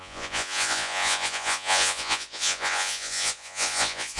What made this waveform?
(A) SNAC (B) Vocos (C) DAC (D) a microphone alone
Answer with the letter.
B